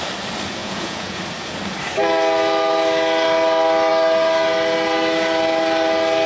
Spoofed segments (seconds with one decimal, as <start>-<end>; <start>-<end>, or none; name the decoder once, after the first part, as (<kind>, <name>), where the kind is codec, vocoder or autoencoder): 0.6-1.2 (vocoder, Vocos)